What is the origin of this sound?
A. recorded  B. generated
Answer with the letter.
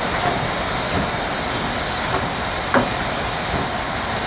A